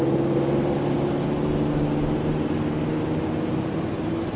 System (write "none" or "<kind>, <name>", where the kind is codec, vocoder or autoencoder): none